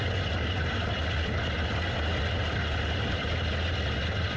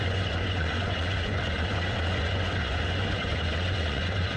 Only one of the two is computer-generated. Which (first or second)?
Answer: second